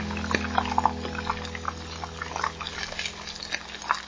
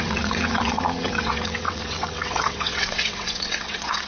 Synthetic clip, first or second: second